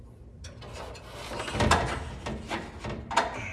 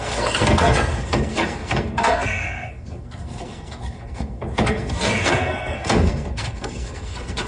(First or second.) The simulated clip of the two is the second